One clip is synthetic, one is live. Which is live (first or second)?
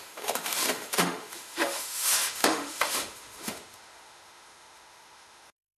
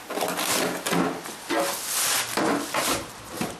second